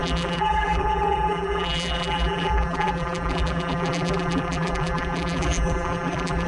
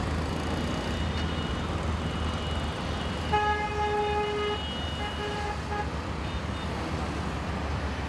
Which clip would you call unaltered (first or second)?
second